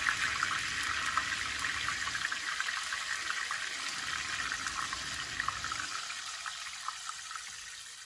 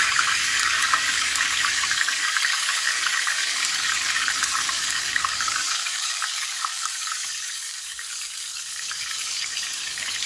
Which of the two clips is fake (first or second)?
second